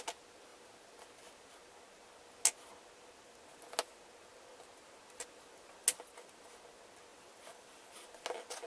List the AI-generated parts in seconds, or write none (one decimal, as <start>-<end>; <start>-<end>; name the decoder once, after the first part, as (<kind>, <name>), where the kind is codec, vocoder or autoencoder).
7.1-7.9 (vocoder, BigVGAN v2)